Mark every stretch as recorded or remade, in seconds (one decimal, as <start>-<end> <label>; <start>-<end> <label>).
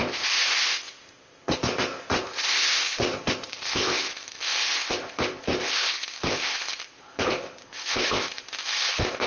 0.0-9.3 remade